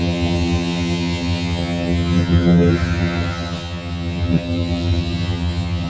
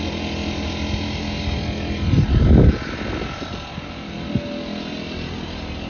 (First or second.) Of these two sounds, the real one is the second